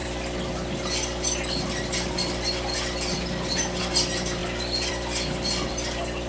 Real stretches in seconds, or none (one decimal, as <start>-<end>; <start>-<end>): 0.0-6.3